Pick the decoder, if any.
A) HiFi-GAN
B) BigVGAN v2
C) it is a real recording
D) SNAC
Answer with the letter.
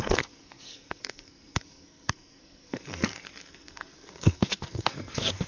D